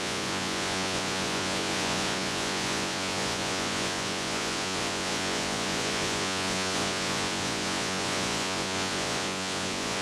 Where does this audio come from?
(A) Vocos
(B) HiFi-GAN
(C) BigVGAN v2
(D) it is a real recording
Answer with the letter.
A